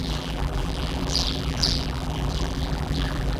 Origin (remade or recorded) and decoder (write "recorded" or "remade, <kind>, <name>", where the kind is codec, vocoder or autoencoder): remade, vocoder, BigVGAN v2